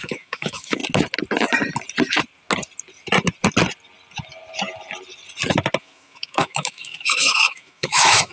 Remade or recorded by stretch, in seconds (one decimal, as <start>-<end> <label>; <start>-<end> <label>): 0.0-0.8 remade; 0.8-5.8 recorded; 5.8-8.3 remade